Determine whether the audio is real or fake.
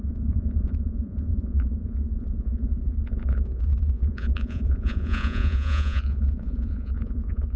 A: fake